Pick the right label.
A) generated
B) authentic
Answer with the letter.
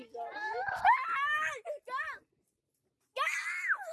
B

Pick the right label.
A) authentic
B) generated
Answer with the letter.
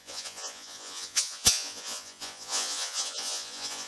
B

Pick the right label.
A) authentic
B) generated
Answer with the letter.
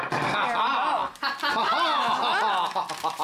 A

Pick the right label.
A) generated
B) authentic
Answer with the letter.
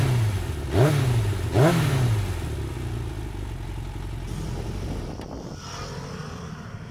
B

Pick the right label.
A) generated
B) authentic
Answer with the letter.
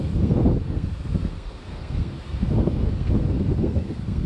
A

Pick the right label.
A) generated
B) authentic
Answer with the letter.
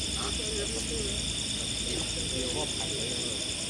B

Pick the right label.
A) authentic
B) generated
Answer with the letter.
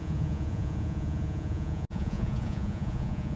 B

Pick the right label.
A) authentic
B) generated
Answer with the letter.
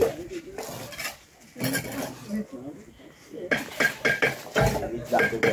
A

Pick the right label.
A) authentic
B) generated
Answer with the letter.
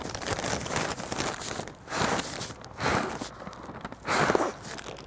A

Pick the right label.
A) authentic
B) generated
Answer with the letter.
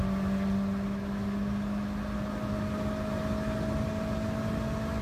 A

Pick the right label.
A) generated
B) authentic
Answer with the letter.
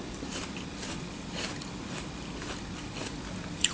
B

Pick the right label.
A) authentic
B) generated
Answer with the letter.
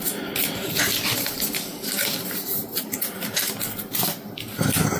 A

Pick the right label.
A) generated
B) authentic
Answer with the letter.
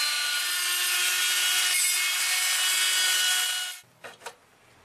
B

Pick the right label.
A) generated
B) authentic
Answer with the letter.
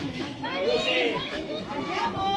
A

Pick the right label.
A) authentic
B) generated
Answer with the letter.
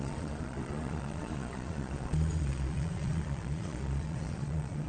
B